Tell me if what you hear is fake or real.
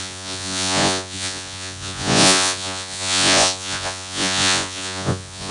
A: fake